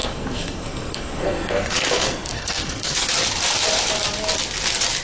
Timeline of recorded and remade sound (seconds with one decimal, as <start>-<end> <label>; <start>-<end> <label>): 0.0-3.0 remade; 3.0-5.0 recorded